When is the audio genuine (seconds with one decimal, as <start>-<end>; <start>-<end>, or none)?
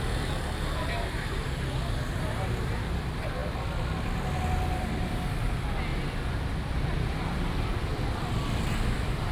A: 0.0-9.3